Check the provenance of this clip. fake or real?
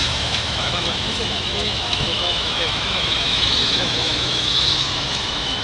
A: fake